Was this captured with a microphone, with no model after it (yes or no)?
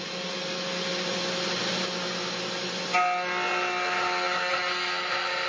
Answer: yes